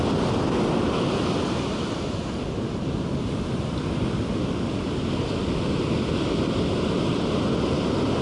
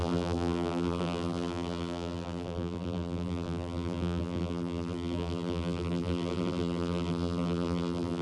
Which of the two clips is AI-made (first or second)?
second